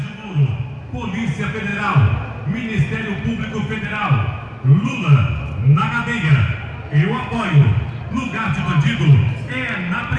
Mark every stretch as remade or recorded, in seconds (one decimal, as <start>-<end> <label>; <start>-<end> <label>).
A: 0.0-7.3 recorded; 7.3-8.4 remade; 8.4-10.2 recorded